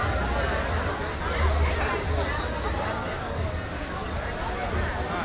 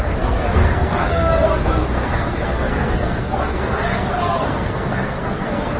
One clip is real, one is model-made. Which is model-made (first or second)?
second